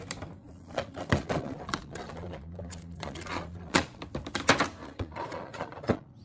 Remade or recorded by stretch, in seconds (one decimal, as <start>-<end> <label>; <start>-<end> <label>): 0.0-0.4 recorded; 0.4-4.0 remade; 4.0-4.8 recorded; 4.8-6.2 remade